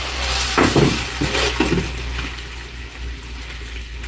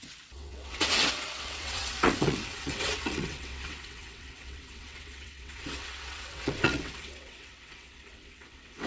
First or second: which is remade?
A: second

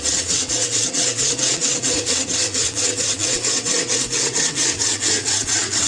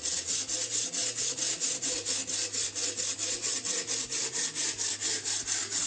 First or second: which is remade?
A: first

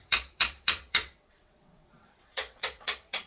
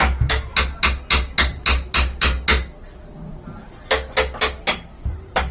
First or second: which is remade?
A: first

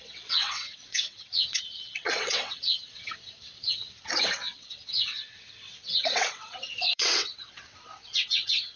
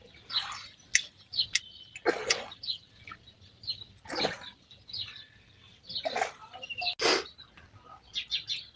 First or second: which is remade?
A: first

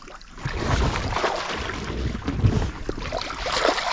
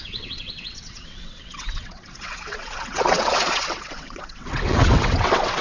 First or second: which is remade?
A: second